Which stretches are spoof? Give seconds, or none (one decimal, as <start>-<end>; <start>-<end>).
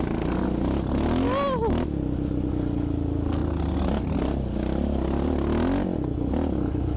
none